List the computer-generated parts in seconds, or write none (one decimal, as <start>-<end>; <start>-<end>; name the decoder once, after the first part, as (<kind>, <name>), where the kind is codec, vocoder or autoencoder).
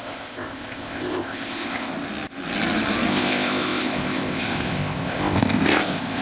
0.0-1.9 (codec, ZipCodec); 3.1-6.2